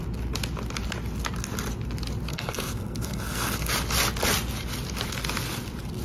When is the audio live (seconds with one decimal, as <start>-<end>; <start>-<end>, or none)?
0.0-2.3; 3.7-6.0